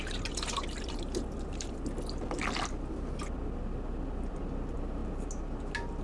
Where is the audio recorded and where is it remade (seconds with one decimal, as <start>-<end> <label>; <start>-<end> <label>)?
0.0-6.0 recorded